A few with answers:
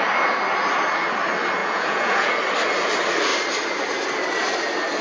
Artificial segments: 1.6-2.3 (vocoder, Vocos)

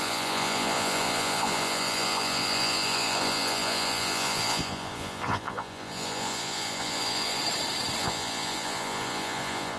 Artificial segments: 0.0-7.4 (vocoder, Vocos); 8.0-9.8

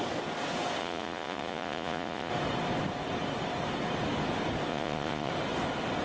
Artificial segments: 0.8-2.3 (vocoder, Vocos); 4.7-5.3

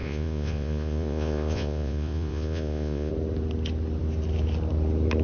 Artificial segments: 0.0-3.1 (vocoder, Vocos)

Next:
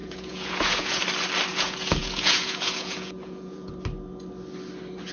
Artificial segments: 0.0-1.0 (vocoder, Vocos); 1.5-3.7

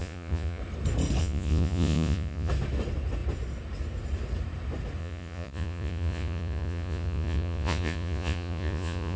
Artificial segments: 0.0-0.6 (vocoder, Vocos); 1.2-2.5; 5.0-9.2

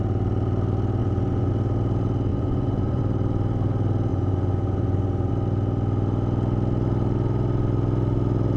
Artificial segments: 1.0-1.5 (vocoder, Vocos); 2.3-3.0; 4.1-5.3

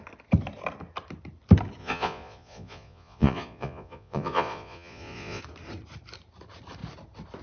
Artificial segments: 1.8-5.4 (vocoder, Vocos)